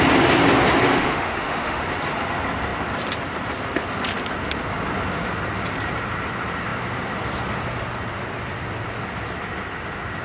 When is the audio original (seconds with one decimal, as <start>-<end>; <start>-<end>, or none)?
0.0-0.9; 1.8-10.2